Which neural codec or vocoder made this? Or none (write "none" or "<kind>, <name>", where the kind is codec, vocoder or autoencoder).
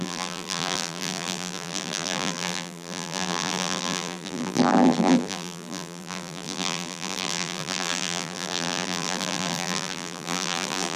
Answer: vocoder, BigVGAN v2